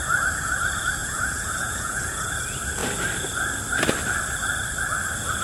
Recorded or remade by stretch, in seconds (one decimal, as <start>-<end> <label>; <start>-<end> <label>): 0.0-1.0 recorded; 1.0-2.3 remade; 2.3-5.4 recorded